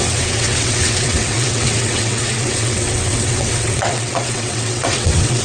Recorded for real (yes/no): no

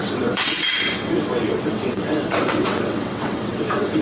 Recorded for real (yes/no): no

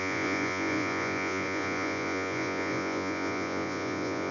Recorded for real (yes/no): no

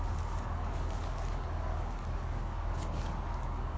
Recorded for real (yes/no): no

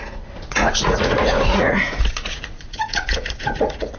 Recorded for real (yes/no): no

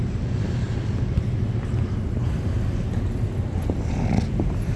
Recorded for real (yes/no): yes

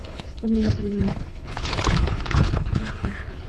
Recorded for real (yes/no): no